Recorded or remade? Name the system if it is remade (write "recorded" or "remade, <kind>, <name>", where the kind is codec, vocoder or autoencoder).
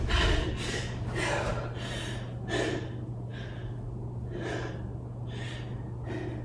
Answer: recorded